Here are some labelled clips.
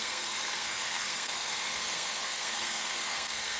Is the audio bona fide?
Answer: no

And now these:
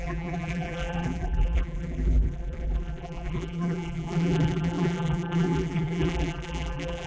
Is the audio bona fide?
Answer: no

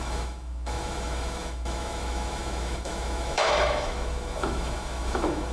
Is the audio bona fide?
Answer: no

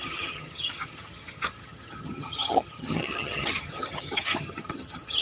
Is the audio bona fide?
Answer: no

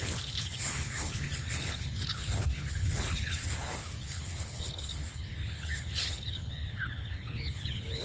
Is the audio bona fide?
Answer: no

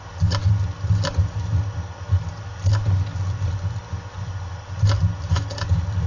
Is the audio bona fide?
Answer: yes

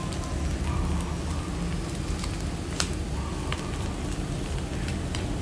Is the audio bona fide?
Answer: yes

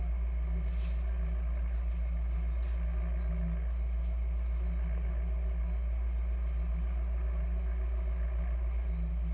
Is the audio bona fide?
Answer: yes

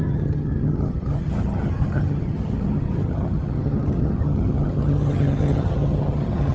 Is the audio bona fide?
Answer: no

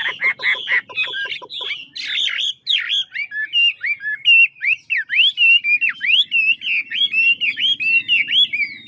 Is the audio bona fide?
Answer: yes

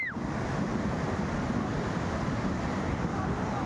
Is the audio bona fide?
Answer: yes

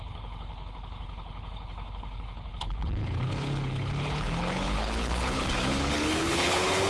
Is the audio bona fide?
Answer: no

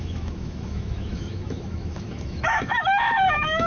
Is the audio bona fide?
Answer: no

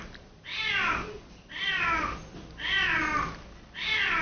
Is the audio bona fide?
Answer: yes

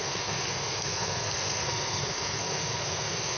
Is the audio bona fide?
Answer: no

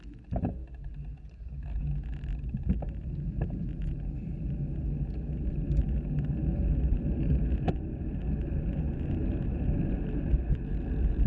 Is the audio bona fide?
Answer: yes